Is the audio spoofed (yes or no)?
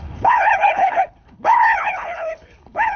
yes